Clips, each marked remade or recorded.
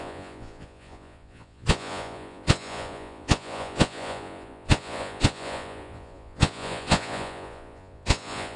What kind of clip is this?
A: remade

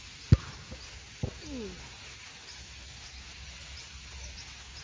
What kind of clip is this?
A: recorded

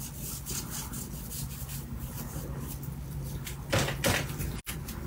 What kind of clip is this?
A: recorded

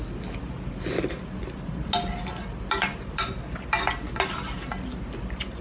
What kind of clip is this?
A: recorded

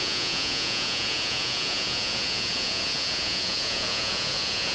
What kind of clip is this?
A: remade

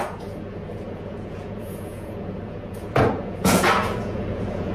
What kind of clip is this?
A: remade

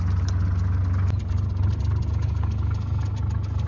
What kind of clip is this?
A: recorded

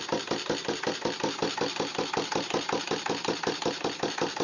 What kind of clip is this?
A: recorded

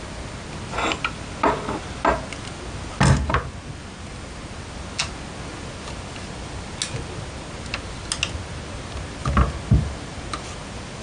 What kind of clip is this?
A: recorded